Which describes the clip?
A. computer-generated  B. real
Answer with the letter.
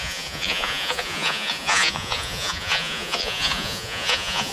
A